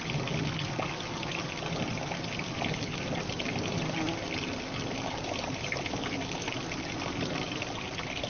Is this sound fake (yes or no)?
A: no